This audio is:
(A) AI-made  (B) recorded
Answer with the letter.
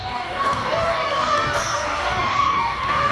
A